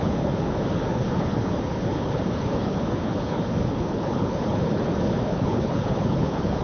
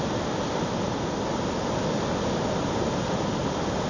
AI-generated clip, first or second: first